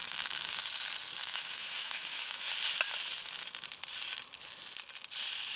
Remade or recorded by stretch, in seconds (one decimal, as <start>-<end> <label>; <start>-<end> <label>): 0.0-0.6 remade; 0.6-1.2 recorded; 1.2-2.5 remade; 2.5-5.6 recorded